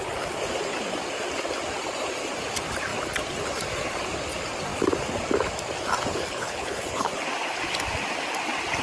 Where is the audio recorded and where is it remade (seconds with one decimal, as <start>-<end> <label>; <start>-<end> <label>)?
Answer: 0.0-6.1 recorded; 6.1-7.1 remade; 7.1-8.8 recorded